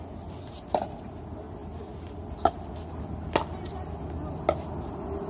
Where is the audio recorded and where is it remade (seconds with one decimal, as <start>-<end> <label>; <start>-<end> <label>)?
0.0-5.3 recorded